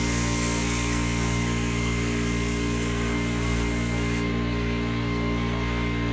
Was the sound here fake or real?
fake